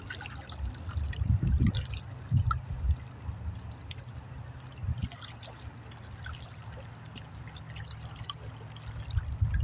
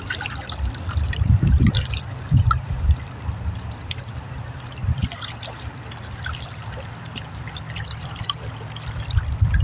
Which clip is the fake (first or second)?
second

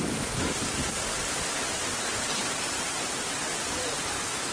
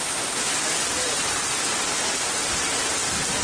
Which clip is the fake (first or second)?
first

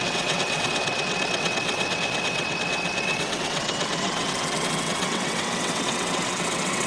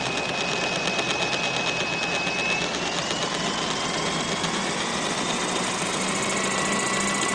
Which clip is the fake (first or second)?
first